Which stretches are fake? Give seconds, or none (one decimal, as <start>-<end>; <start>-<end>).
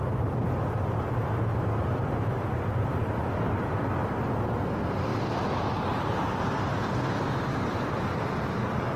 1.5-3.0; 5.1-6.4